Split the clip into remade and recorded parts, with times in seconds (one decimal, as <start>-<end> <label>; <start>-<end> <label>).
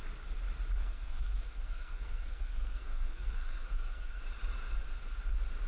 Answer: 0.0-0.8 recorded; 0.8-4.2 remade; 4.2-5.7 recorded